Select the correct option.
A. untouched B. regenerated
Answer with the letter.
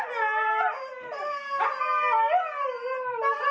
A